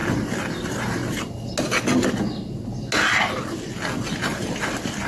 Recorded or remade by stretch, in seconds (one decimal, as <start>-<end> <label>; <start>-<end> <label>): 0.0-0.5 recorded; 0.5-1.0 remade; 1.0-4.1 recorded; 4.1-5.1 remade